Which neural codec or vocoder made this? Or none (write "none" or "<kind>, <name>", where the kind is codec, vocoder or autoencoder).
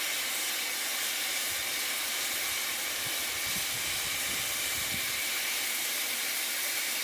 none